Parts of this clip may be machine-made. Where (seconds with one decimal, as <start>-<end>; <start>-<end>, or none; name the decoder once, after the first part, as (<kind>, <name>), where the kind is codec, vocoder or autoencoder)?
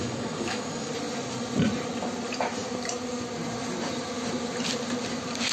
0.0-0.9 (codec, DAC)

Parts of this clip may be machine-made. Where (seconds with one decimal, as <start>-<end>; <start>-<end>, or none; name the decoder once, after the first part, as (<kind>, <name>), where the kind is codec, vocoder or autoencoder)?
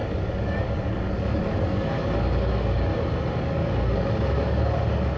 0.0-2.9 (codec, DAC); 3.4-5.2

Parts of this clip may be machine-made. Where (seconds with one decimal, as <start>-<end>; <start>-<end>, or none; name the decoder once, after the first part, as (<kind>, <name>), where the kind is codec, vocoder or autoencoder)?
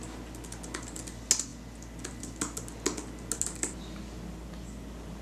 none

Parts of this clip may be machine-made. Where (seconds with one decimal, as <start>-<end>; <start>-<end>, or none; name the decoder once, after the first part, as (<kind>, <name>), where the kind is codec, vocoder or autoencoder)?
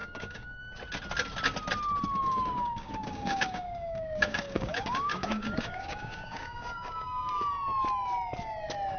0.0-0.6 (codec, DAC); 2.2-7.3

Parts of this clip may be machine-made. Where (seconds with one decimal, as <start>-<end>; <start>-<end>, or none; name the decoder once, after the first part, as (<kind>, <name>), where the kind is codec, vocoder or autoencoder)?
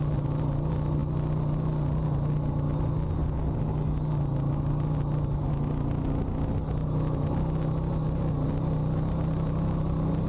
none